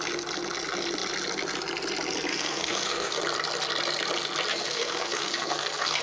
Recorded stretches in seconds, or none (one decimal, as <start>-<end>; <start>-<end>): 0.0-2.3; 3.2-4.5

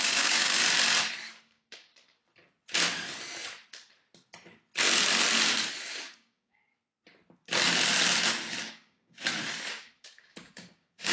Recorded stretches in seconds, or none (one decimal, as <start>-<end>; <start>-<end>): 0.6-1.4; 1.9-5.9; 6.7-8.6; 9.2-9.7

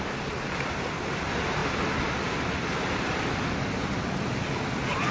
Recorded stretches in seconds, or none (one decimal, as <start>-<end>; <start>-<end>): 0.0-5.1

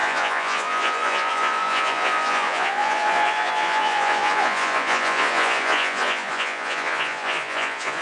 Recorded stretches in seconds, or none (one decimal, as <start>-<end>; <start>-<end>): none

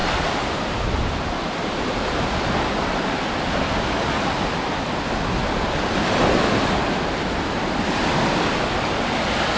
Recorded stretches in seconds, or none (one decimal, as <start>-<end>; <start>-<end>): 0.0-9.6

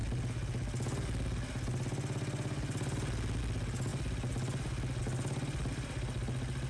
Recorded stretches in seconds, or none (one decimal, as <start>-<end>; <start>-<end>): 0.0-6.7

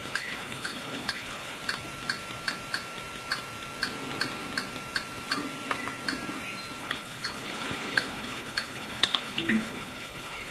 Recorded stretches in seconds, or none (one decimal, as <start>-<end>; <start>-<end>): 1.6-6.8